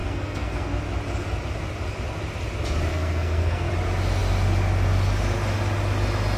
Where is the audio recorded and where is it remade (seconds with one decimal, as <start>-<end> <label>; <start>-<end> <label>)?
0.0-0.8 remade; 0.8-2.9 recorded; 2.9-3.7 remade; 3.7-6.4 recorded